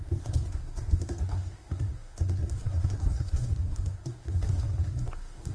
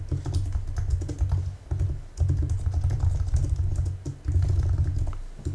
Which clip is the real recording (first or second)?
second